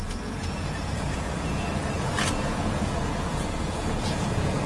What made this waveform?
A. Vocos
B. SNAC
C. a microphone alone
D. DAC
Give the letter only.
A